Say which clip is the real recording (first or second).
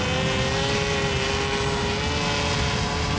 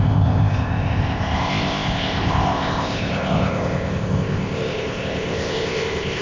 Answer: first